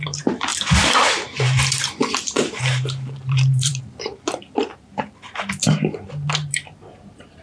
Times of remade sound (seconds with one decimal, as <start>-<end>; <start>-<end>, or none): 0.0-0.5; 1.4-7.4